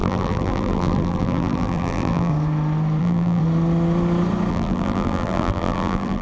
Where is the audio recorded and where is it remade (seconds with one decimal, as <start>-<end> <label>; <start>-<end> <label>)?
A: 0.0-2.3 remade; 2.3-3.0 recorded; 3.0-3.4 remade; 3.4-4.5 recorded; 4.5-6.2 remade